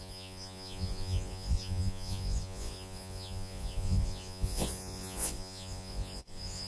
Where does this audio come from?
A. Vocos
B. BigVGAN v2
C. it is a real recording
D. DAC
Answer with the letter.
A